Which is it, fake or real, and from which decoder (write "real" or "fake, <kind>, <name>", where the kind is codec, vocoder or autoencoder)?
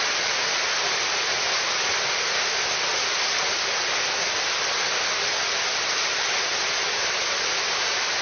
real